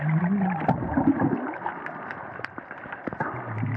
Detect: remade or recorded recorded